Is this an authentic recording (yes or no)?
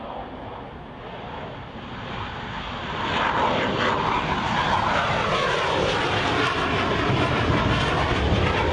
yes